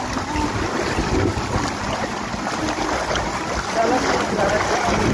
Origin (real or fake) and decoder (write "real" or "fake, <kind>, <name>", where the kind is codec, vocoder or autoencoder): real